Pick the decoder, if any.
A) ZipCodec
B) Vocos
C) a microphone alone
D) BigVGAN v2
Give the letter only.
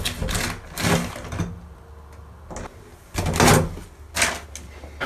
C